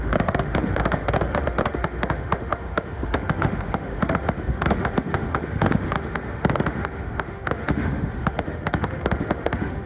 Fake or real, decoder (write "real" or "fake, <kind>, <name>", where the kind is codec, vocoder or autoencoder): fake, autoencoder, DAC-VAE